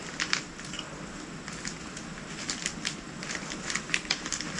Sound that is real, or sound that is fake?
real